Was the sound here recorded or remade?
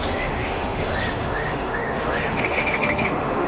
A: remade